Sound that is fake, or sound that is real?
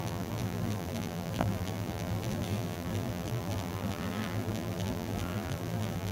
fake